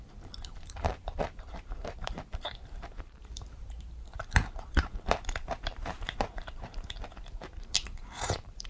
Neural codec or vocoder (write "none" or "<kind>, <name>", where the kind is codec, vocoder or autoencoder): vocoder, BigVGAN v2